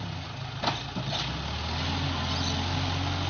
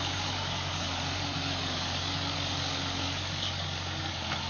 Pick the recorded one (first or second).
first